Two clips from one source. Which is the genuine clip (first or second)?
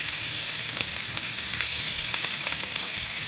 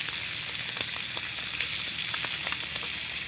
second